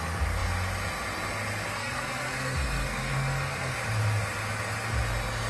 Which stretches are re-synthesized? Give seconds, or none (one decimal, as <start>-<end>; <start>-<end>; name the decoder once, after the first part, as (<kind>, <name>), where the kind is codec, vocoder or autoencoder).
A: 1.7-3.8 (codec, SNAC)